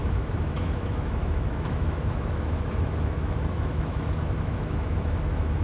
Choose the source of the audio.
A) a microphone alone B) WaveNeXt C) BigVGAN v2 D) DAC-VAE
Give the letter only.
D